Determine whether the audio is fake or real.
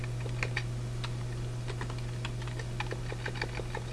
real